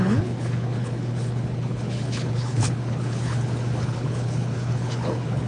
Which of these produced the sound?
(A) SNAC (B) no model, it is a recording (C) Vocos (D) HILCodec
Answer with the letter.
D